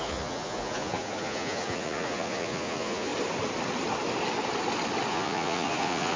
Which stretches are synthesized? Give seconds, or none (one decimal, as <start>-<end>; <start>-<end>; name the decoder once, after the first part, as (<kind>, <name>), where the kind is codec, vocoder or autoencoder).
0.0-3.1 (vocoder, Vocos); 5.1-6.2